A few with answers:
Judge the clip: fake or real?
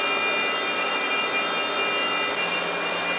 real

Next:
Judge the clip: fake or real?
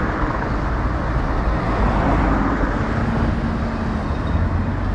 real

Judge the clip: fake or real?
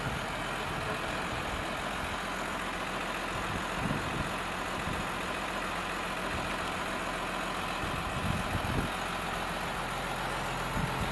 real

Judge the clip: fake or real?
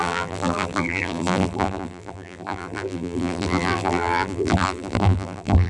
fake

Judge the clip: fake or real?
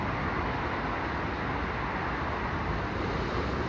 real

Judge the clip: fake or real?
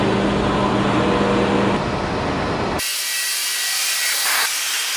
real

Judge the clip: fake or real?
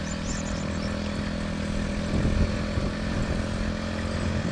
real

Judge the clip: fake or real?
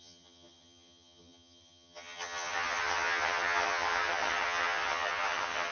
fake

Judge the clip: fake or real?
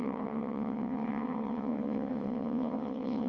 fake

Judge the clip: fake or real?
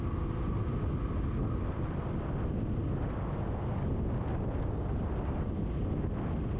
real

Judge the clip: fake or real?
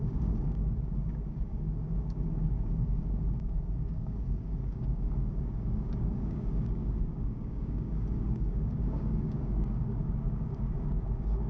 fake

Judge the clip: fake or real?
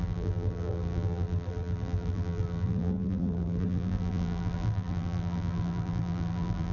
fake